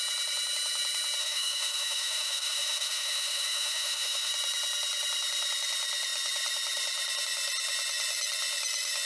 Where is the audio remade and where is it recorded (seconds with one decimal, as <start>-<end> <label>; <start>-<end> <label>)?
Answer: 0.0-1.2 recorded; 1.2-4.3 remade; 4.3-9.1 recorded